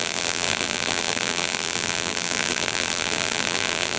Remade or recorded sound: remade